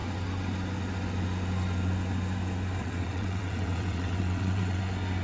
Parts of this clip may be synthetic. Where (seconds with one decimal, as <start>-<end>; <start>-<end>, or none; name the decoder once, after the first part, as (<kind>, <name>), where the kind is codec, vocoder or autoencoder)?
2.8-4.8 (vocoder, WaveNeXt)